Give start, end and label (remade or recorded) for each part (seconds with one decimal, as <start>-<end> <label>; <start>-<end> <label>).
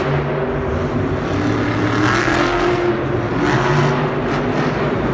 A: 0.0-2.2 recorded; 2.2-2.9 remade; 2.9-5.1 recorded